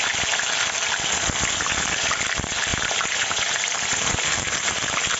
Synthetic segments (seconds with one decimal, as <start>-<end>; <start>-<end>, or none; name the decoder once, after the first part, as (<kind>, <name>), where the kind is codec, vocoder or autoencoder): 2.7-4.8 (vocoder, BigVGAN v2)

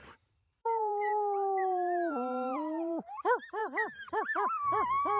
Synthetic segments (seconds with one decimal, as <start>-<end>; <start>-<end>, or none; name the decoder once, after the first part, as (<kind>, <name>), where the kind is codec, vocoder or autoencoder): 0.0-3.1 (vocoder, BigVGAN v2); 3.6-5.2

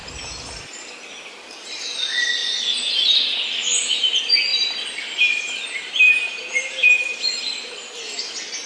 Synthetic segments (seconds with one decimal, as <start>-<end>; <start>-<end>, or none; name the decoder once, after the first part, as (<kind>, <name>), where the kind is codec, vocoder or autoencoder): 0.0-1.0 (vocoder, BigVGAN v2); 4.5-5.2; 6.5-7.0